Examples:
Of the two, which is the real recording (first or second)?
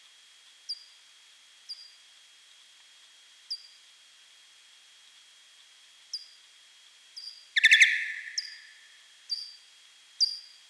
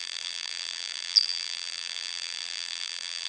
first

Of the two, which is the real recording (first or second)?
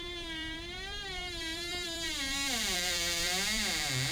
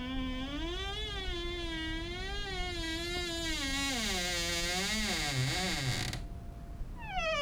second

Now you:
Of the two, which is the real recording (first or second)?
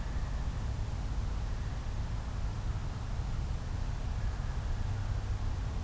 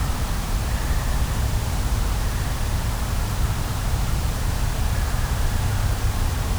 first